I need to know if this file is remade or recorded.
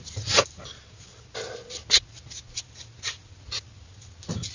recorded